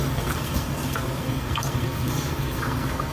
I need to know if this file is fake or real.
fake